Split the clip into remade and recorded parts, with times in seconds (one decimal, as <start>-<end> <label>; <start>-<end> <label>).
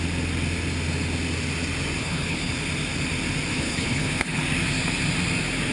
0.0-2.0 recorded; 2.0-2.5 remade; 2.5-3.5 recorded; 3.5-4.4 remade; 4.4-5.7 recorded